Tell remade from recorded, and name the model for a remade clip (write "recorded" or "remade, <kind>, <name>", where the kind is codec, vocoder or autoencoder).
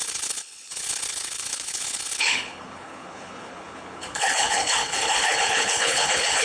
remade, codec, HILCodec